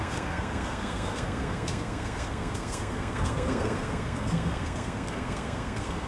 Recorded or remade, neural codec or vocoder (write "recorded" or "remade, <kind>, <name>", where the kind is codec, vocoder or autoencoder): remade, codec, SNAC